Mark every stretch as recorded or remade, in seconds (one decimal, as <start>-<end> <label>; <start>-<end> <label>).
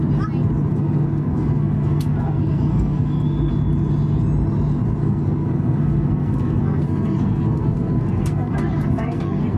0.0-0.7 recorded; 0.7-3.5 remade; 3.5-5.0 recorded; 5.0-9.6 remade